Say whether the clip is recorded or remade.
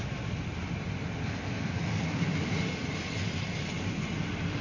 recorded